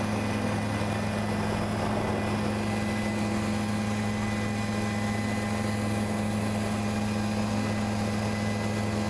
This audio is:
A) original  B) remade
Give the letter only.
A